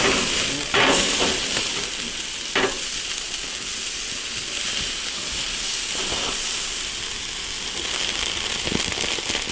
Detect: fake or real real